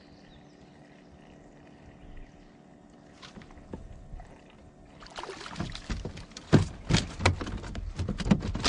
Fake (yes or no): no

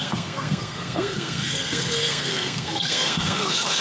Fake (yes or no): yes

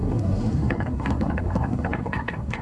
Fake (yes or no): yes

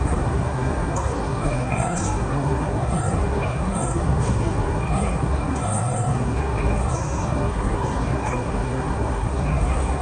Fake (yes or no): yes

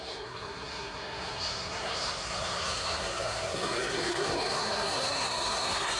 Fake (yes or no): yes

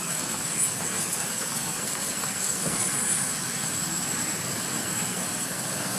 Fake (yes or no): yes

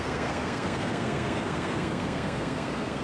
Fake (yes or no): yes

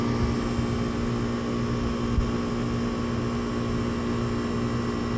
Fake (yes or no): no